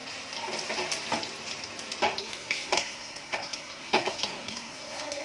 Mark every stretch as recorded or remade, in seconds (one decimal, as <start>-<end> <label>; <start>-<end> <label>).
0.0-2.2 recorded; 2.2-5.2 remade

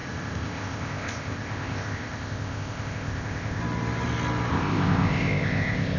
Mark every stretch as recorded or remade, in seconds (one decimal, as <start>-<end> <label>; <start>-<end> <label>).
0.0-3.6 remade; 3.6-4.5 recorded; 4.5-6.0 remade

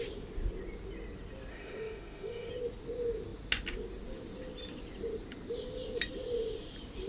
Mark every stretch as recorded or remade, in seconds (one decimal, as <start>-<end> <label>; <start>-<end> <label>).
0.0-1.5 recorded; 1.5-2.5 remade; 2.5-7.1 recorded

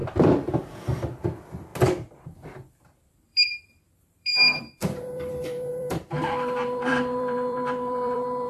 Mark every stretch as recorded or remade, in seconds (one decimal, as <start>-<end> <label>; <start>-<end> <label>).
0.0-1.7 remade; 1.7-2.2 recorded; 2.2-8.5 remade

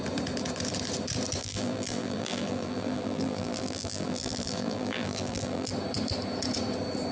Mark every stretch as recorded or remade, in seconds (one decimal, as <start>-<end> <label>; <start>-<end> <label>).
0.0-1.4 recorded; 1.4-5.7 remade; 5.7-7.1 recorded

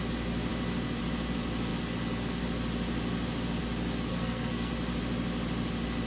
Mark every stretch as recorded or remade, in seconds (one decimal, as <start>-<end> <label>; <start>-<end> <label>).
0.0-4.1 recorded; 4.1-4.7 remade; 4.7-6.1 recorded

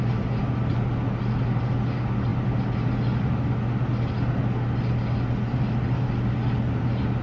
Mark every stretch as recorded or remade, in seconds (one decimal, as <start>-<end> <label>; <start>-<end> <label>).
0.0-7.2 recorded